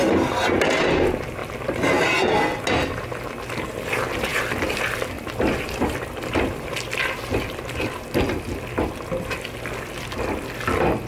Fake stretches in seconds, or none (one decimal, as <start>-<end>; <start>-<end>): 4.3-7.2